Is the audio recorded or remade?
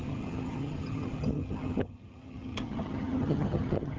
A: remade